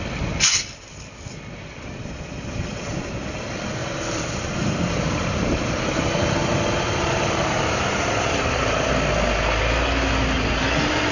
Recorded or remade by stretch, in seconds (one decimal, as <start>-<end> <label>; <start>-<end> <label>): 0.0-3.8 recorded; 3.8-8.9 remade; 8.9-11.1 recorded